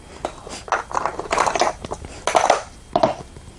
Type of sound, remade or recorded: recorded